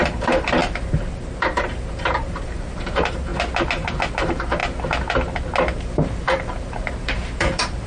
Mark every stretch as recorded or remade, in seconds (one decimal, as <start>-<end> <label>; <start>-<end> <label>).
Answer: 0.0-3.3 remade; 3.3-4.1 recorded; 4.1-4.6 remade; 4.6-5.8 recorded; 5.8-7.9 remade